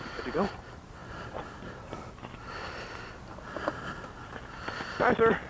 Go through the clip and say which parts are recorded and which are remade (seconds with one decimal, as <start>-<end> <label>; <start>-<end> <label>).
0.0-5.5 recorded